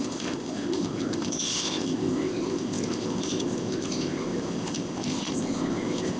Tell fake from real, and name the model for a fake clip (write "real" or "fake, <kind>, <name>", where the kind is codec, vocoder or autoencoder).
fake, codec, ZipCodec